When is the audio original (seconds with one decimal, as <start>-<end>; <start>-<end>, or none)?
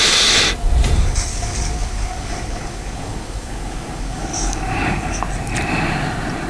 0.0-1.3; 5.2-6.5